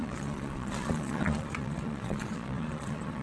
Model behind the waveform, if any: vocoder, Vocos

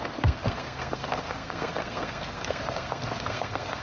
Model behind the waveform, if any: codec, SNAC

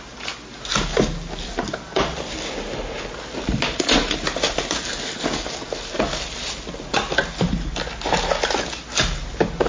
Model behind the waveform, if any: none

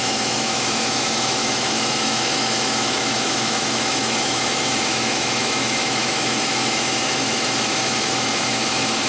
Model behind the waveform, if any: autoencoder, DAC-VAE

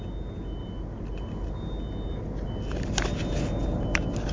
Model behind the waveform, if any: none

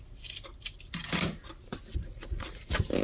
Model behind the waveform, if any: vocoder, BigVGAN v2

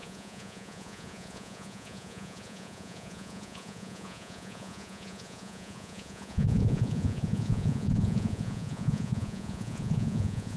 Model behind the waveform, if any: vocoder, Vocos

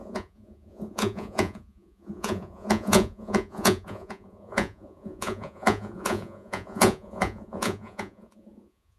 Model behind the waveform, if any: vocoder, Vocos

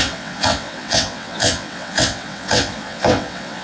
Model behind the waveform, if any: vocoder, WaveNeXt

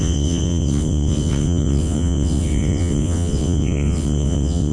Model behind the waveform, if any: vocoder, WaveNeXt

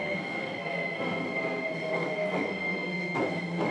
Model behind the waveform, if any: codec, SNAC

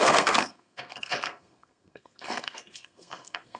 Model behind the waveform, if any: codec, SNAC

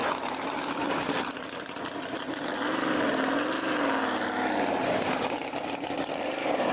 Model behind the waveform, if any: none